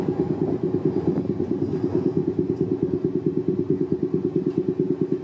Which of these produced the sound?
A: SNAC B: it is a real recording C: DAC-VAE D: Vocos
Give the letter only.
B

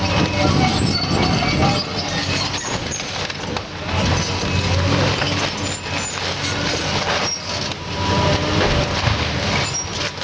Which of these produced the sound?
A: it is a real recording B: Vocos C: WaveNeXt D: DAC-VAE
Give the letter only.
A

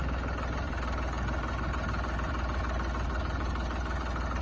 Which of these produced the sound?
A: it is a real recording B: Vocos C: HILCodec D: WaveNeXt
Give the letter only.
A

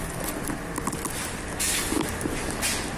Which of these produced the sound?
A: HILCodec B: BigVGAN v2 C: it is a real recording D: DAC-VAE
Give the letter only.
C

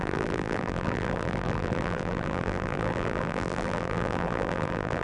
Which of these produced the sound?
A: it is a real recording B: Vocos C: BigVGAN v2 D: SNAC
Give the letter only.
C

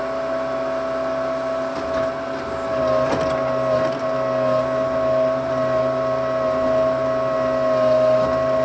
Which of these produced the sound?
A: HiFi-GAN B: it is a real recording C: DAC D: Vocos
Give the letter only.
B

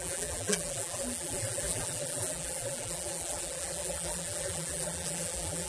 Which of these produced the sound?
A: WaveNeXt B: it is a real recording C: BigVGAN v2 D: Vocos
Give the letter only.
C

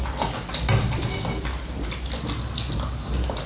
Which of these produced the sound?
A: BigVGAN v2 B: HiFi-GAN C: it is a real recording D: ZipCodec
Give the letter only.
C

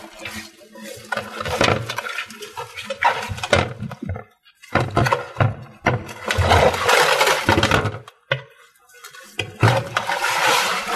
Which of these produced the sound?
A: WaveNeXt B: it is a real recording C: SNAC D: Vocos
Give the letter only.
B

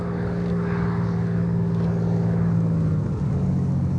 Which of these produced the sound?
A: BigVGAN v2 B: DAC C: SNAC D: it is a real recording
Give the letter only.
B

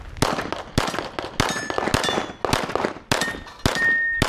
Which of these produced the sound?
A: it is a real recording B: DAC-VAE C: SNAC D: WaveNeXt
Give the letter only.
A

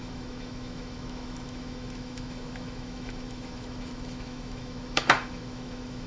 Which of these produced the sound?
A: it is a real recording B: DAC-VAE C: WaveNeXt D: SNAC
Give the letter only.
B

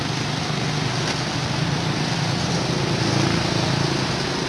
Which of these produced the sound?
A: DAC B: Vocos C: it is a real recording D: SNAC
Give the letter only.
C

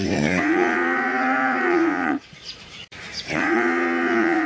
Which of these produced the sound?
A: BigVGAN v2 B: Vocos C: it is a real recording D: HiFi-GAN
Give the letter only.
B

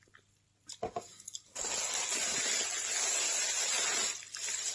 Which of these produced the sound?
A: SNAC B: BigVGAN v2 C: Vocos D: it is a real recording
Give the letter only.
D